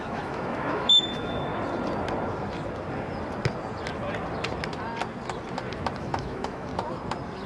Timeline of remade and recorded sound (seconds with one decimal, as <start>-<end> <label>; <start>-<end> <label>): 0.0-1.5 remade; 1.5-6.0 recorded; 6.0-6.7 remade; 6.7-7.5 recorded